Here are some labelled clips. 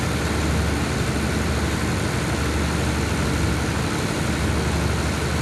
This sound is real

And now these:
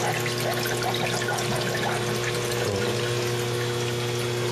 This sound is real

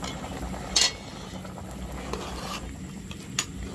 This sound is real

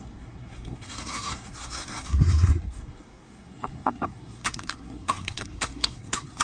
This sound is fake